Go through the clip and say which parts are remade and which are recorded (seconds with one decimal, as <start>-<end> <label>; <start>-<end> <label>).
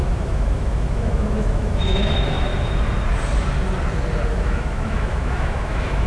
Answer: 0.0-2.5 remade; 2.5-4.3 recorded; 4.3-6.1 remade